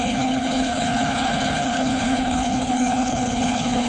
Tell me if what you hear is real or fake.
fake